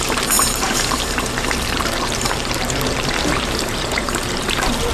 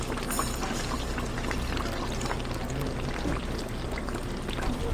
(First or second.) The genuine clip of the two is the second